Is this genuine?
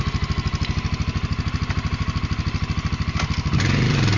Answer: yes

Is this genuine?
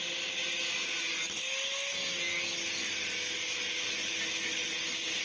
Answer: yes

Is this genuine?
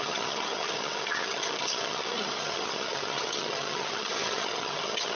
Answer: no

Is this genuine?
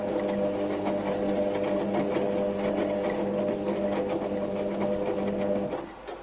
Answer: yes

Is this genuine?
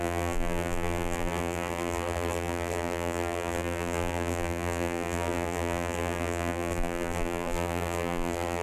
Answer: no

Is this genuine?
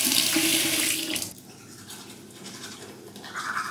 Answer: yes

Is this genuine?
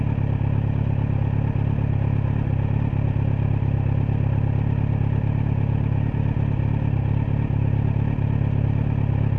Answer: yes